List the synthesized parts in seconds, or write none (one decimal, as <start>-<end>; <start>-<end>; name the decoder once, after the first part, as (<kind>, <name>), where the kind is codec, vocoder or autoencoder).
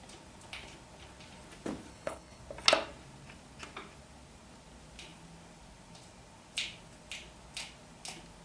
1.9-2.4 (codec, HILCodec)